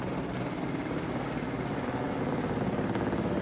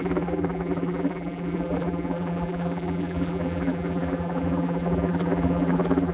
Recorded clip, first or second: first